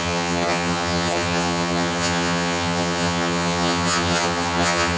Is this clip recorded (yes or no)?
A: no